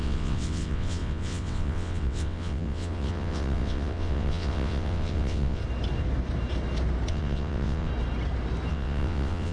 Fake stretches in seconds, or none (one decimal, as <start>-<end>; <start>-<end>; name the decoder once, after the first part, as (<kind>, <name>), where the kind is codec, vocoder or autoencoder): 0.0-5.6 (vocoder, WaveNeXt); 7.1-7.9; 8.7-9.5